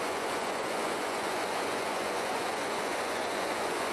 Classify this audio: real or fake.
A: fake